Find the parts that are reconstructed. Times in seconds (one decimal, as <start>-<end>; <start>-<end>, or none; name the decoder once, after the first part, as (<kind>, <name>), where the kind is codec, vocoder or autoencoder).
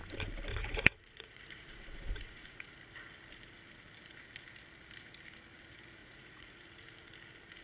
0.5-2.7 (vocoder, Vocos); 6.0-6.6